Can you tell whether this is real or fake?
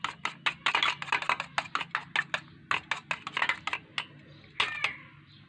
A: real